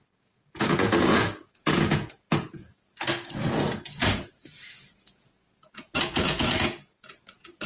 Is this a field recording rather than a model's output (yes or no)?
no